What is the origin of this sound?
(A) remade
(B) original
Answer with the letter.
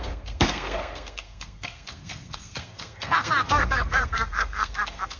A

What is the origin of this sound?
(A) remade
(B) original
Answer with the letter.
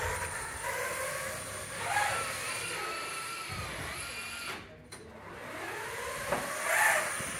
B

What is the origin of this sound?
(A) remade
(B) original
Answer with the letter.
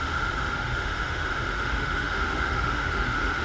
A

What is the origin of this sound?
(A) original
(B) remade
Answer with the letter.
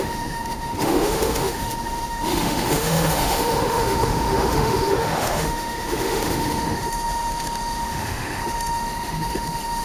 B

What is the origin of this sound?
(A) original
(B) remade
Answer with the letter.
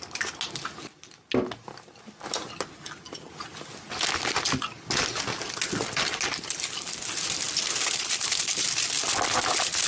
A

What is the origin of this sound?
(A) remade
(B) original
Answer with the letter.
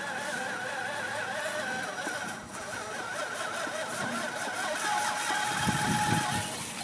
B